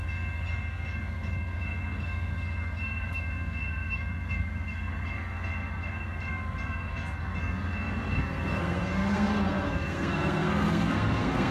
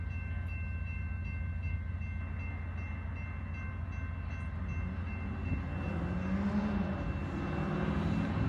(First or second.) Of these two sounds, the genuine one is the second